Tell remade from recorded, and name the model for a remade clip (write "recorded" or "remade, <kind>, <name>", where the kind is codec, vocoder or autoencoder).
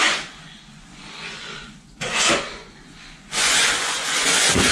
remade, vocoder, Vocos